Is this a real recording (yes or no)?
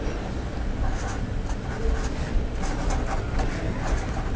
yes